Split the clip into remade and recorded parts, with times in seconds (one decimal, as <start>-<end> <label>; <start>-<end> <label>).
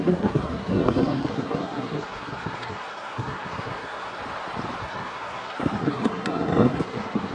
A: 0.0-4.2 remade; 4.2-4.8 recorded; 4.8-7.3 remade